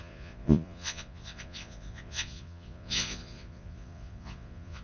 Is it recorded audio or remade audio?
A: remade